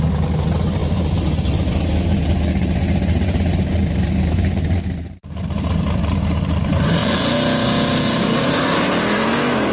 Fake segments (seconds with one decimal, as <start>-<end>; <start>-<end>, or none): 0.0-7.0; 8.2-9.7